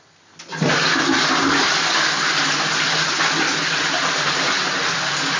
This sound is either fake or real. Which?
real